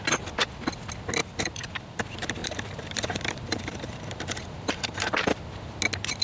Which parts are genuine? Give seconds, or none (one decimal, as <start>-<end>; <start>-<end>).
0.0-1.2; 2.0-2.4; 5.4-6.2